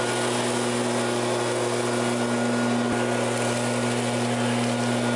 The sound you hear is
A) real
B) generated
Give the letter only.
A